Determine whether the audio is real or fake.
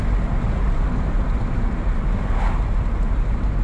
real